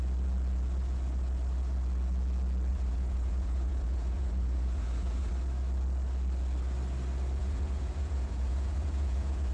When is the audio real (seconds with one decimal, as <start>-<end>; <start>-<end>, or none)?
0.0-2.7; 5.3-7.4